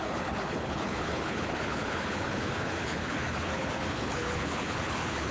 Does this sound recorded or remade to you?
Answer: remade